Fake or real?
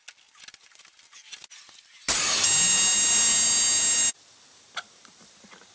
real